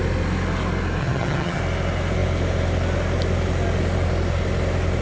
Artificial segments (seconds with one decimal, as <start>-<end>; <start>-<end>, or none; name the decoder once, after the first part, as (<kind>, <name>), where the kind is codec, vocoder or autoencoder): 1.0-1.6 (vocoder, HiFi-GAN)